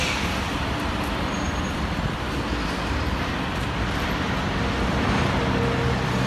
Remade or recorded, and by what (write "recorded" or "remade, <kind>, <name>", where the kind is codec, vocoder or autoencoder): recorded